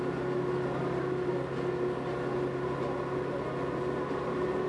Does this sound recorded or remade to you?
recorded